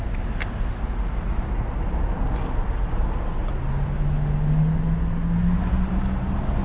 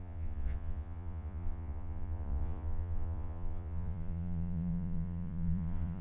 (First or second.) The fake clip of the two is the second